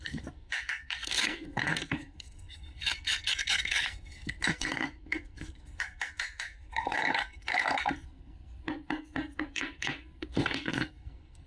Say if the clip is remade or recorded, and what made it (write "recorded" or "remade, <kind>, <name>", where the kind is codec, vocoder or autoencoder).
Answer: remade, codec, SNAC